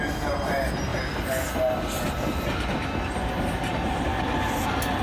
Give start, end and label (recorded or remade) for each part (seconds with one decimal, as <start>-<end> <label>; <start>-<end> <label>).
0.0-5.0 recorded